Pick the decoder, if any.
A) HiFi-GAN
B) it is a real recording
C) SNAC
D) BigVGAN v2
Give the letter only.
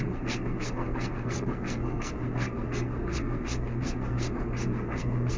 C